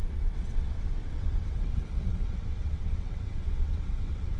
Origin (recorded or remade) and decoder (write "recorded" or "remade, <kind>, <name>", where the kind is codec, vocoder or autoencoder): remade, vocoder, WaveNeXt